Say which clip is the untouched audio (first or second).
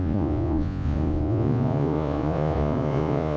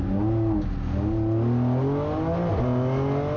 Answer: second